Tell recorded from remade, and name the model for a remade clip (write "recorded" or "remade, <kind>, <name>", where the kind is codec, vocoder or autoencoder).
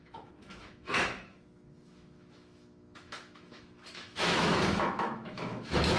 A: remade, autoencoder, DAC-VAE